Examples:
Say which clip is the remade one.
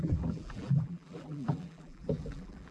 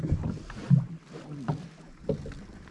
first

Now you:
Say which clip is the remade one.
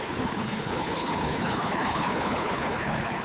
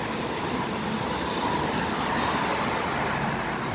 first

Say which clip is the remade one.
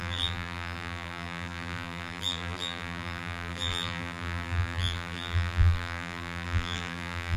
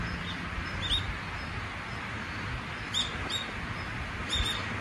first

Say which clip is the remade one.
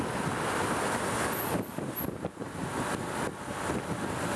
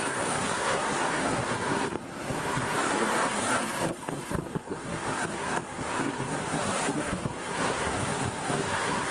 second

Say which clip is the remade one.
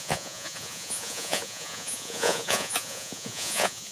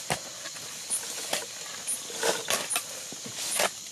first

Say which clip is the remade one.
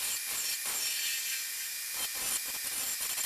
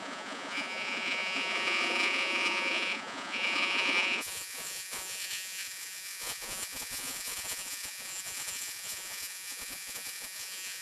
second